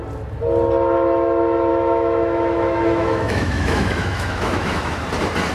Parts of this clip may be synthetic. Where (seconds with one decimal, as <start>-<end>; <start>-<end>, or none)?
1.7-5.0